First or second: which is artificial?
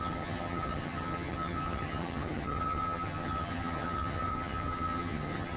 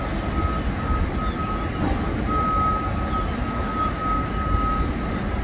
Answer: first